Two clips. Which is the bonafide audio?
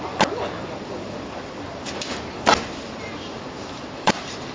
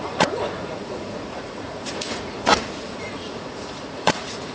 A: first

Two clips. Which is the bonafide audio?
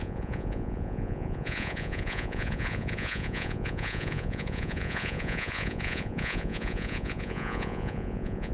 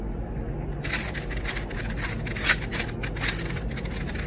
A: second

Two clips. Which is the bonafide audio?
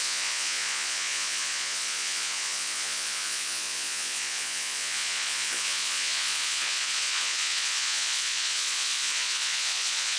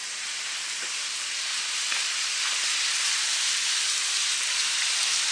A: second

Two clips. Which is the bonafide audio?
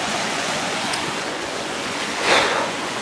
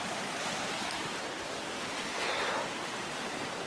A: second